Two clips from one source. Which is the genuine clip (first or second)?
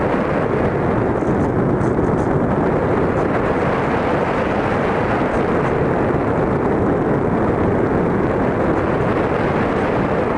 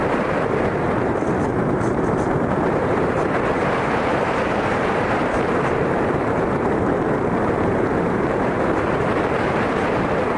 first